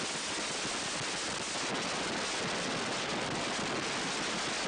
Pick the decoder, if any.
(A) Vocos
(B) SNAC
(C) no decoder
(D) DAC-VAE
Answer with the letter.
C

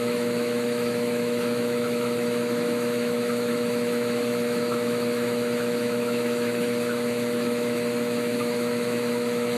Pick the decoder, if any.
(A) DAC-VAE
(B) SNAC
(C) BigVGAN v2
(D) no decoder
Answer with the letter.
A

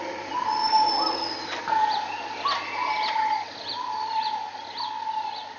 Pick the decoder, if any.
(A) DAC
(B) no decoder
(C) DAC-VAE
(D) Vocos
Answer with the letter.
B